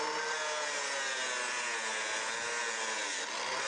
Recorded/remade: recorded